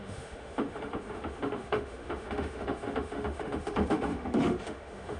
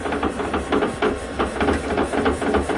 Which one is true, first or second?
second